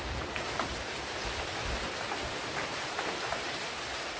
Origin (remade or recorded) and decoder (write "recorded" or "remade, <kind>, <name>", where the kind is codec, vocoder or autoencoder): remade, vocoder, BigVGAN v2